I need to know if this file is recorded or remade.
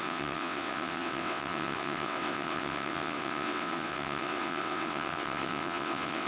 remade